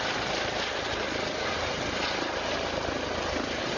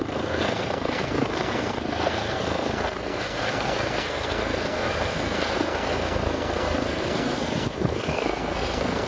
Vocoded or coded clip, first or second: second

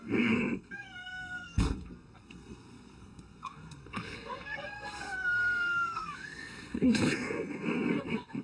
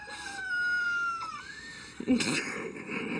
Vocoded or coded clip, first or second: first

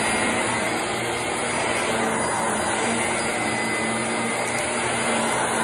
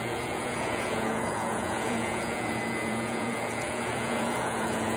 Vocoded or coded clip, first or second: second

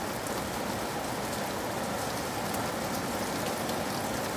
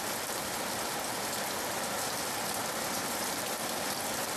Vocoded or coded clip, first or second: second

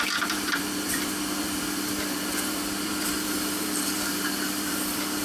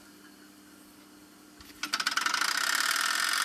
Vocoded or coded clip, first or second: first